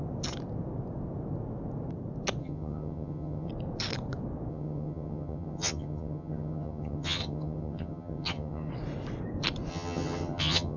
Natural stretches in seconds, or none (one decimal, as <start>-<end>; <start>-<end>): 0.0-2.4; 3.5-4.5; 8.7-9.7